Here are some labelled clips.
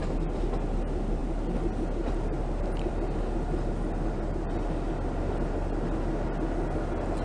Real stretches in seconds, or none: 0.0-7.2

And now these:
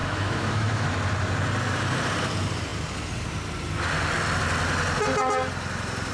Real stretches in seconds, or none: 0.9-6.1

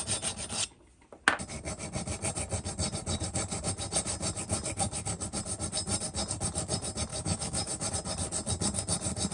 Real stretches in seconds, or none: 0.0-7.1; 7.9-9.3

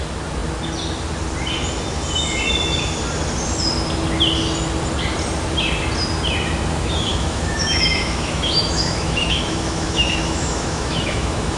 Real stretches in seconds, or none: 0.0-7.1

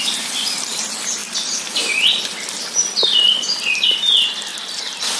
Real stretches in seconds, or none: 0.0-5.2